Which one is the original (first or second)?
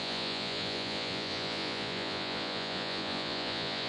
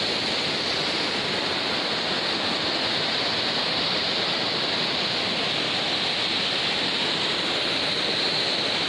second